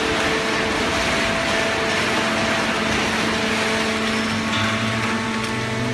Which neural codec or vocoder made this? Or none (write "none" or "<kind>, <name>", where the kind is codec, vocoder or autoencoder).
none